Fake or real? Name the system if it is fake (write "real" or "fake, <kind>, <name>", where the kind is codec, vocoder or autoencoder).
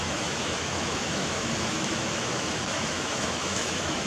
fake, autoencoder, DAC-VAE